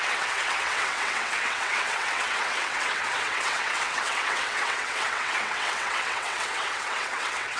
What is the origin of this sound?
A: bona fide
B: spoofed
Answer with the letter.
B